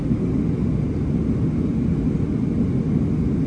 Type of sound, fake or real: real